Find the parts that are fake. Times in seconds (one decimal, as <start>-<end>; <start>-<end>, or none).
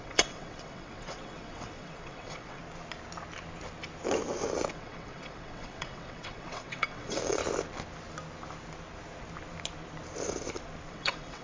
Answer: 0.0-2.6; 4.7-7.4; 10.9-11.4